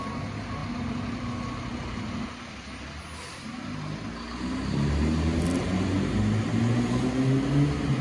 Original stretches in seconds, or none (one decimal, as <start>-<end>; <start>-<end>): 0.0-8.0